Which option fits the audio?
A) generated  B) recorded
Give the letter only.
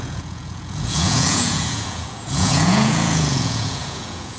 A